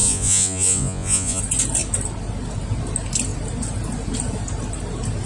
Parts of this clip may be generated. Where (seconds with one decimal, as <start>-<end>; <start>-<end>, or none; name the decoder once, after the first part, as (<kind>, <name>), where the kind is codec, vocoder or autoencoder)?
0.0-1.4 (vocoder, Vocos)